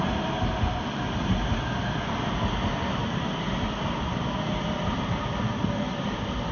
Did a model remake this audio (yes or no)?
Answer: no